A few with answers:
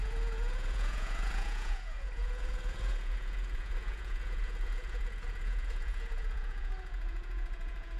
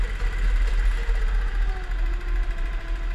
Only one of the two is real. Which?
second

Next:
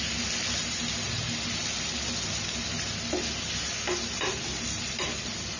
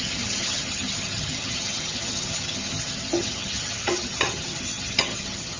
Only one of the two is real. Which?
first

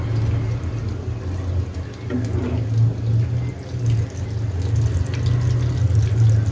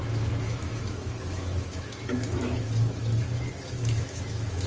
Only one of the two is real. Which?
first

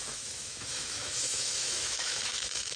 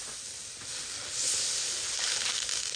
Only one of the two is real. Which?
second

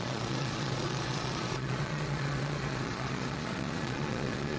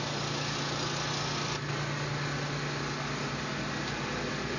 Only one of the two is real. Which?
second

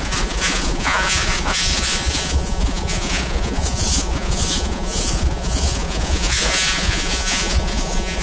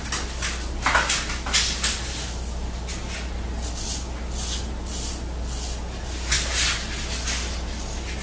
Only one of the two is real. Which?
second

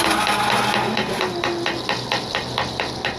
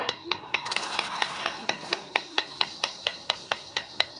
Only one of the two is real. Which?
first